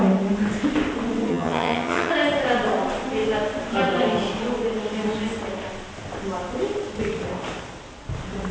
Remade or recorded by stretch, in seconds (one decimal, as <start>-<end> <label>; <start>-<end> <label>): 0.0-1.3 recorded; 1.3-2.1 remade; 2.1-8.5 recorded